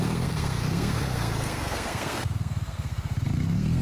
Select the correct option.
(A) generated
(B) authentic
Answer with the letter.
A